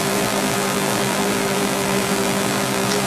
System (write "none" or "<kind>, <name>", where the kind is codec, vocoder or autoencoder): vocoder, BigVGAN v2